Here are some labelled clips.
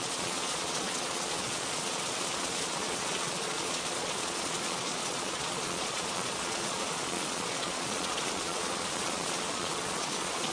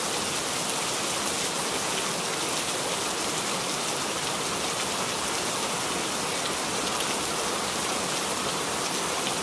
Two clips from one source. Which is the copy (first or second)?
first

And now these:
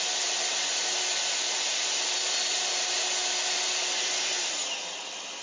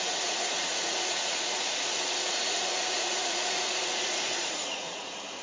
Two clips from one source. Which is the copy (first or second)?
second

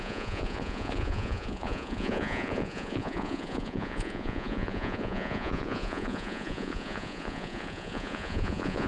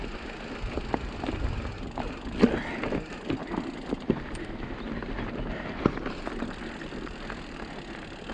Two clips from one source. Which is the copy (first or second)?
first